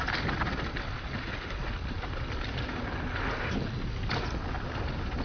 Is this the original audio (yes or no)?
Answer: yes